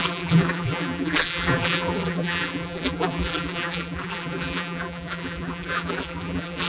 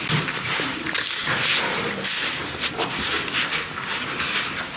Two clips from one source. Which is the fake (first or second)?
first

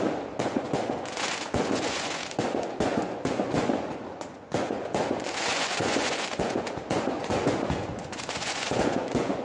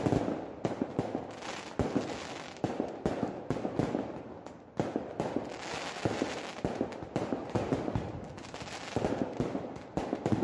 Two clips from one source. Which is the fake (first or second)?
first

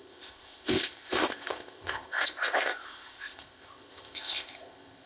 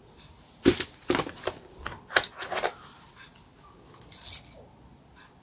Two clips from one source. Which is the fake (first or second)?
first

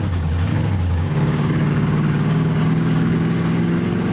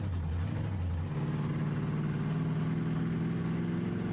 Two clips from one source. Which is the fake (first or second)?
first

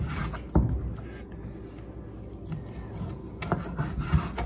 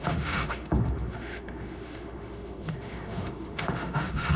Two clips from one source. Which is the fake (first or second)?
second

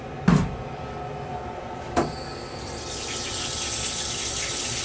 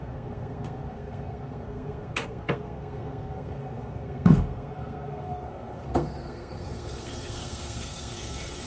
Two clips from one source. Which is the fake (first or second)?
second